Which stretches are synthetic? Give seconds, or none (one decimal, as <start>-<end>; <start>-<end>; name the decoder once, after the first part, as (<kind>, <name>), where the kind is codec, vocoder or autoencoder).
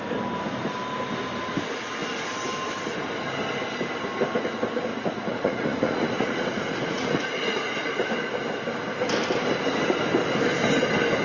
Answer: 4.9-7.7 (vocoder, Vocos)